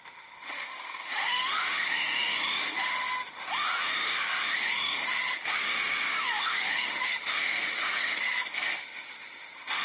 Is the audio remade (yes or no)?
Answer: yes